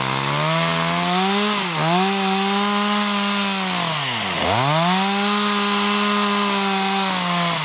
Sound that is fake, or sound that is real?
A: real